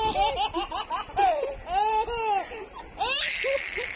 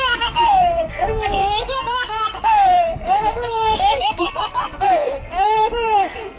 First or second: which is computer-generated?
second